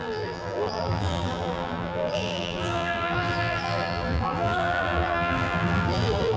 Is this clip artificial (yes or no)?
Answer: yes